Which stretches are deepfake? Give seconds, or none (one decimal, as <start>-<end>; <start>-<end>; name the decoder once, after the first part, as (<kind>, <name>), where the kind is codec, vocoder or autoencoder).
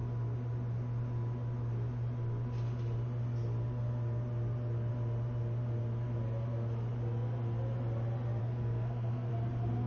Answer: 8.4-9.3 (codec, SNAC)